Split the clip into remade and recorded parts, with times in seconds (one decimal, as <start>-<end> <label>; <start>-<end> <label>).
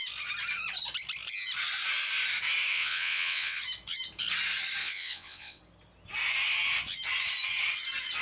0.0-2.7 recorded; 2.7-3.6 remade; 3.6-4.8 recorded; 4.8-5.6 remade; 5.6-8.2 recorded